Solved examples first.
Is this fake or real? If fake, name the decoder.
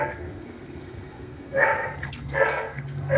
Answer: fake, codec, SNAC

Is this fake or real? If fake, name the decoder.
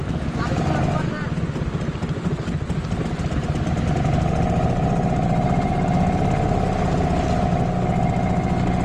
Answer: real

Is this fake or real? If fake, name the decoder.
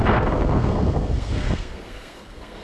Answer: fake, codec, SNAC